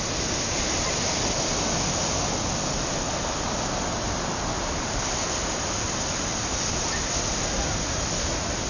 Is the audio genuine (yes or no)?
yes